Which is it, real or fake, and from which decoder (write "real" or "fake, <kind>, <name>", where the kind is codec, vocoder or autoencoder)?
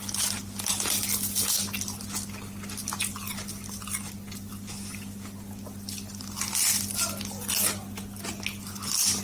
real